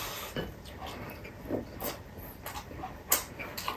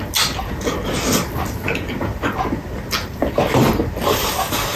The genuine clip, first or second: second